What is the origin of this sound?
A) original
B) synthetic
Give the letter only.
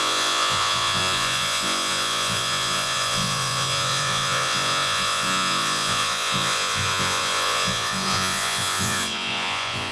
B